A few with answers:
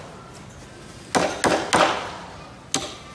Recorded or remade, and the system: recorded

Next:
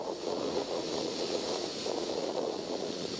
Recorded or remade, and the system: remade, vocoder, Vocos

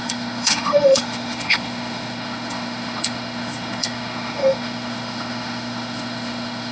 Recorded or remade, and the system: remade, autoencoder, DAC-VAE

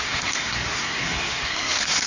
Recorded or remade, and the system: remade, codec, SNAC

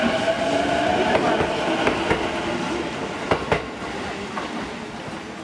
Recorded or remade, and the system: recorded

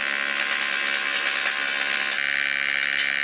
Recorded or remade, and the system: recorded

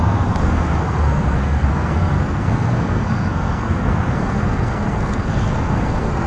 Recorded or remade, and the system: remade, codec, SNAC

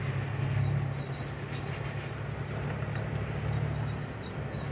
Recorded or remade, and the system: recorded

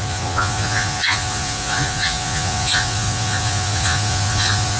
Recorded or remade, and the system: remade, vocoder, Vocos